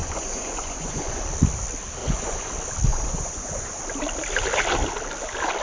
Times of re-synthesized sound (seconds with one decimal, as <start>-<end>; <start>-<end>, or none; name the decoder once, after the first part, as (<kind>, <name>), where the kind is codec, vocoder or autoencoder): 0.0-1.2 (vocoder, Vocos); 2.0-2.5; 2.9-3.8